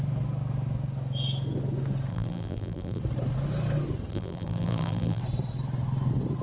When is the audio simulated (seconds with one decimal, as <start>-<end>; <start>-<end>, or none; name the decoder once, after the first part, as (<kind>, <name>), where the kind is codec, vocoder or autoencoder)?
2.1-3.0 (vocoder, BigVGAN v2); 4.1-5.2